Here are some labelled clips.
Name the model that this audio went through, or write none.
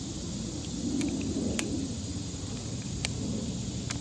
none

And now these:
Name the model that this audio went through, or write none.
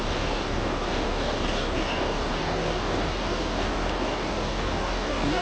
codec, DAC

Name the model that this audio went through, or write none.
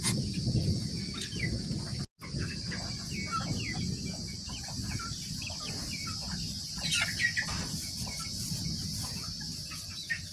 none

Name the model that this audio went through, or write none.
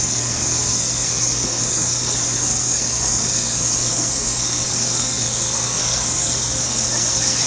codec, SNAC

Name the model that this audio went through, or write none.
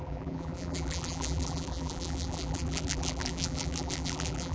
vocoder, BigVGAN v2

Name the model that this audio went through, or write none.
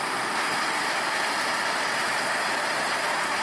none